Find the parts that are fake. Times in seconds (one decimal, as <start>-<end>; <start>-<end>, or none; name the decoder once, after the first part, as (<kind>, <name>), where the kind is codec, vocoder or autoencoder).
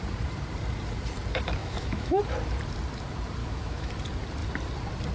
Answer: 1.6-2.2 (autoencoder, DAC-VAE); 3.4-3.9